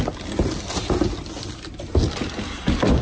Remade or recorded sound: recorded